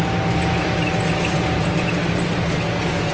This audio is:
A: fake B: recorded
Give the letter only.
B